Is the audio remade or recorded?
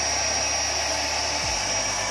recorded